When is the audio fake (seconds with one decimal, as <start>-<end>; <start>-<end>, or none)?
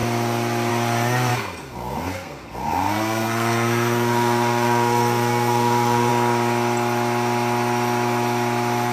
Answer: 1.3-6.1